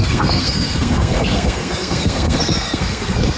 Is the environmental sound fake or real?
fake